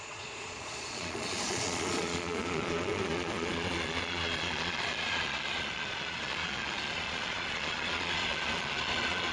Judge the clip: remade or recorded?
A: remade